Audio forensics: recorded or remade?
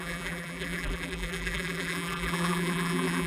remade